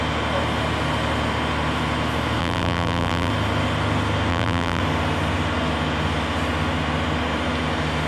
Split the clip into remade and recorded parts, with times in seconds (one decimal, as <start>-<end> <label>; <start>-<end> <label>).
0.0-2.4 recorded; 2.4-3.3 remade; 3.3-4.3 recorded; 4.3-4.8 remade; 4.8-8.1 recorded